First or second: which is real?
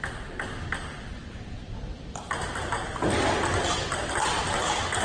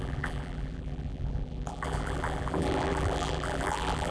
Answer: first